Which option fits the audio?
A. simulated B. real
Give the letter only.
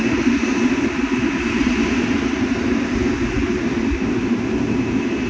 B